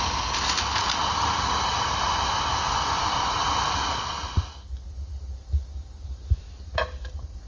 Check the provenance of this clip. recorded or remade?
recorded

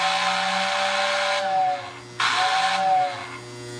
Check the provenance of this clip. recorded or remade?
recorded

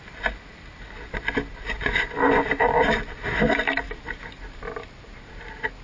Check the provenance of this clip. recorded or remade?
recorded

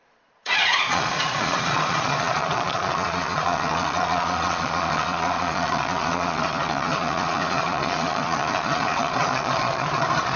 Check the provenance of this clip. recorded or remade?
remade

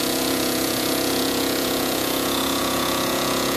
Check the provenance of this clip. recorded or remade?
remade